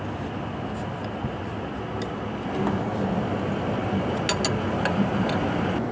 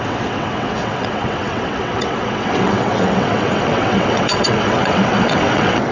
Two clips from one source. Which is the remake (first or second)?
second